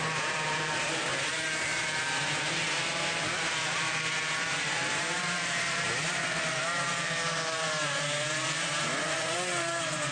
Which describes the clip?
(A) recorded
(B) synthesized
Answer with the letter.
B